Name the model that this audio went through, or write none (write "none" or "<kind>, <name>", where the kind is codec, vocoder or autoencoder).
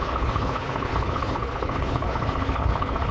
codec, HILCodec